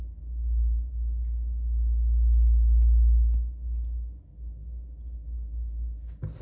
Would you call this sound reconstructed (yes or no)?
no